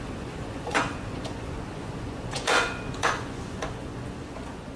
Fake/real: fake